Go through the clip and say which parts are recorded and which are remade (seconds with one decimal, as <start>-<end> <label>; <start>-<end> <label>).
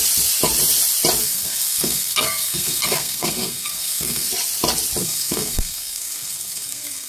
0.0-1.2 recorded; 1.2-4.3 remade; 4.3-5.0 recorded; 5.0-7.1 remade